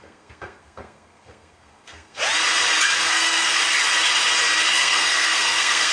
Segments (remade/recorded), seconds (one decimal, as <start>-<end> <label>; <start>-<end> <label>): 0.0-2.2 remade; 2.2-3.0 recorded; 3.0-3.6 remade; 3.6-4.8 recorded; 4.8-5.9 remade

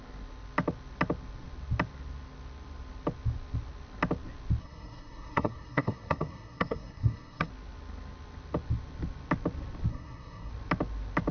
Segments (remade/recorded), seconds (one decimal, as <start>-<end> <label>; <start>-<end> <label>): 0.0-4.6 recorded; 4.6-7.5 remade; 7.5-9.9 recorded; 9.9-10.5 remade; 10.5-11.3 recorded

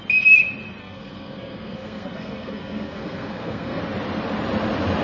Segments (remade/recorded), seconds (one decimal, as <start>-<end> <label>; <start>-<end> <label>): 0.0-0.8 recorded; 0.8-3.8 remade; 3.8-5.0 recorded

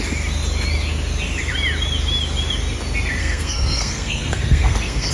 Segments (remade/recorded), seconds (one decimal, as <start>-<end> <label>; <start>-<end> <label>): 0.0-3.2 recorded; 3.2-5.1 remade

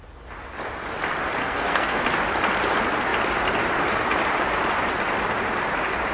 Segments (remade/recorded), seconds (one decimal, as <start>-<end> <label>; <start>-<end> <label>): 0.0-1.4 recorded; 1.4-2.0 remade; 2.0-6.1 recorded